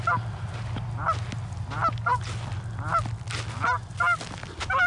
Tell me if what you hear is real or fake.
real